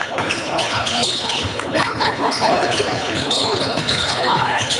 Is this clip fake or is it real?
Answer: fake